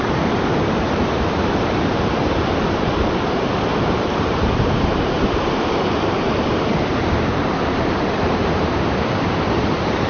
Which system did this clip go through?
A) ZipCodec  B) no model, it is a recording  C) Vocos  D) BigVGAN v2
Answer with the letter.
D